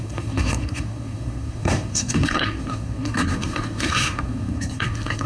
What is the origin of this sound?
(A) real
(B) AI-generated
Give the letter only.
B